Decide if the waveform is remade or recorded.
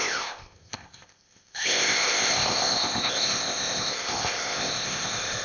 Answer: remade